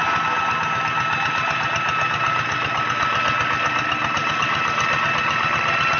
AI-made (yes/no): no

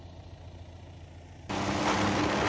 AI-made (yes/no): no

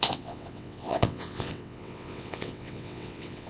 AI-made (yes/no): yes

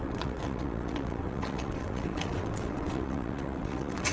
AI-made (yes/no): yes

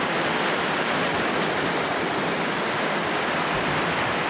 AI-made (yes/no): no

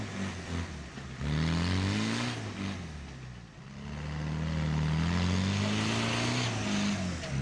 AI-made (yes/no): no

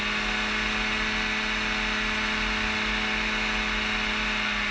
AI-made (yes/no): no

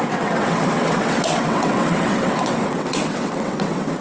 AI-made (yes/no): yes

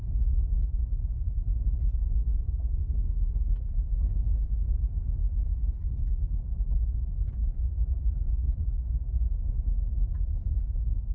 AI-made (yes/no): no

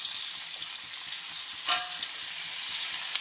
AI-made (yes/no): no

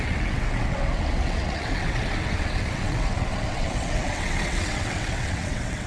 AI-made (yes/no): yes